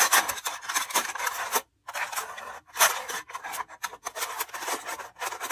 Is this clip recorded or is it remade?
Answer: recorded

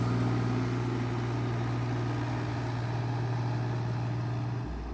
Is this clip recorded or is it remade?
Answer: recorded